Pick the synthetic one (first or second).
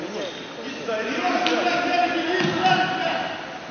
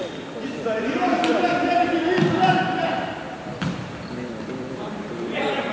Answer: second